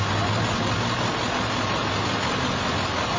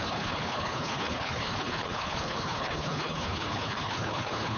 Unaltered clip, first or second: first